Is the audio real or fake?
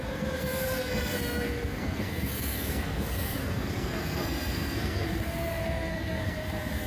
fake